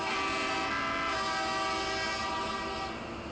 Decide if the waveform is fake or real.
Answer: real